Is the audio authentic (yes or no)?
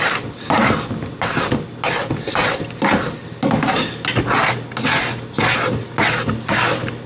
yes